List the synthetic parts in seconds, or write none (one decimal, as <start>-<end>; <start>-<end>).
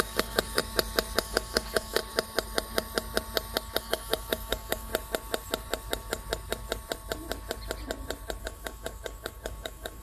0.0-0.6; 1.2-2.0; 3.8-4.9; 8.4-10.0